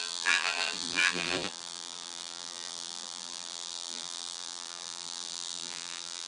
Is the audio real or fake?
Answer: fake